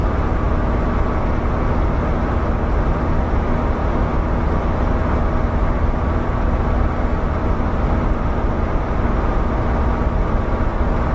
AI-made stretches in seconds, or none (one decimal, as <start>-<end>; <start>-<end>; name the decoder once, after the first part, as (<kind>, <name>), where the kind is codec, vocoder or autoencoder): none